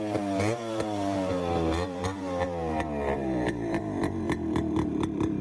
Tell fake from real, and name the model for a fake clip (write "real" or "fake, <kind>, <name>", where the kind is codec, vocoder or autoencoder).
fake, vocoder, BigVGAN v2